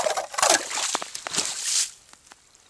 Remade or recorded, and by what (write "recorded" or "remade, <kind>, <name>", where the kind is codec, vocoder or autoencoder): recorded